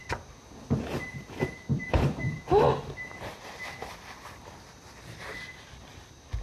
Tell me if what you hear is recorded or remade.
remade